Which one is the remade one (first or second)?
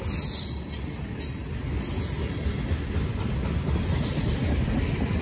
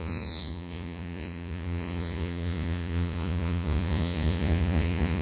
second